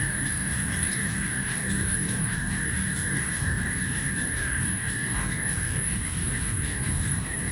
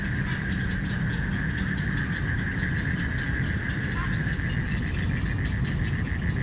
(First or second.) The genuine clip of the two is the second